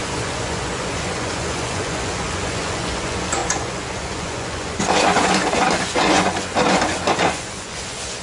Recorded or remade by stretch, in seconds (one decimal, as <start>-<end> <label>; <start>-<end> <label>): 0.0-8.2 remade